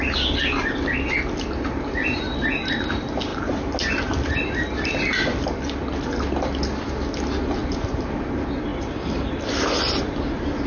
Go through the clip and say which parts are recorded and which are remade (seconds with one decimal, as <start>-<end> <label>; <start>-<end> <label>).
0.0-10.7 recorded